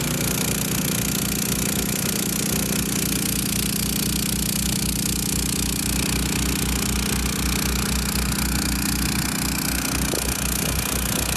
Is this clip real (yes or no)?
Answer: yes